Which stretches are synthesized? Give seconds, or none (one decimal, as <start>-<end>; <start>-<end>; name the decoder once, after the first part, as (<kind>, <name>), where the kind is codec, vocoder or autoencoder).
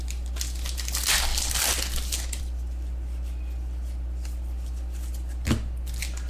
none